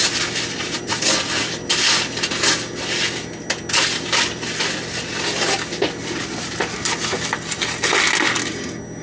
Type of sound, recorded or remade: recorded